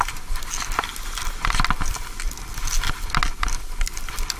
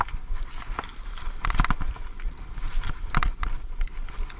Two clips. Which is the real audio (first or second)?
first